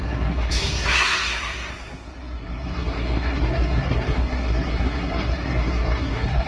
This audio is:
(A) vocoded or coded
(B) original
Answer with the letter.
A